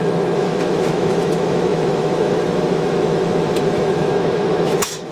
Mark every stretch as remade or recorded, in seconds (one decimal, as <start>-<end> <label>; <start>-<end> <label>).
0.0-5.1 remade